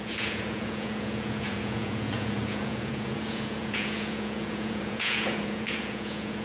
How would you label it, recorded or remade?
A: remade